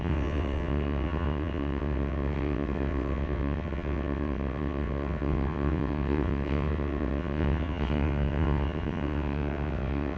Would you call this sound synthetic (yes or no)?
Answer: yes